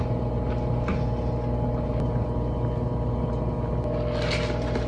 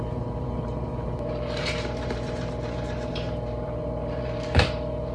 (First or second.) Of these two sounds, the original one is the first